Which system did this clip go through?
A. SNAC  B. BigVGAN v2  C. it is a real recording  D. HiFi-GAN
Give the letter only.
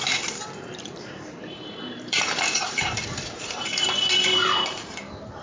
B